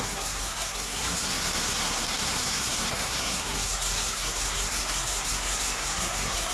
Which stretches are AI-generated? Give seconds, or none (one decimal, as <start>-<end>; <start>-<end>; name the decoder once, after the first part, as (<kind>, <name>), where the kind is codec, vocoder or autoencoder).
0.0-6.5 (codec, SNAC)